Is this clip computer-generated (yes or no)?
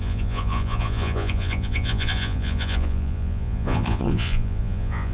yes